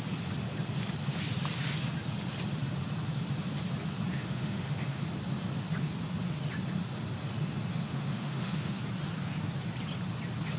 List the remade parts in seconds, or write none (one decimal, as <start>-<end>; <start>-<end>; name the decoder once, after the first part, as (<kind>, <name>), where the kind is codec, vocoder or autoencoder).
4.1-5.0 (autoencoder, DAC-VAE); 7.7-8.8